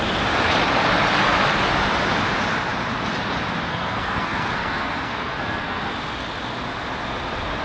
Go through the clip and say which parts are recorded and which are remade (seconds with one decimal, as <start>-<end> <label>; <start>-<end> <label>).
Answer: 0.0-3.7 recorded; 3.7-5.9 remade; 5.9-7.6 recorded